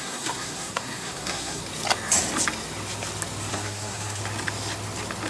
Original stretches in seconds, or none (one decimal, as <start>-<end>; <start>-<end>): 1.6-3.5; 4.2-5.3